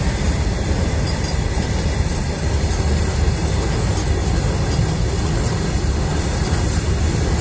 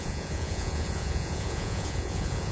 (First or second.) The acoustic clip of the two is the first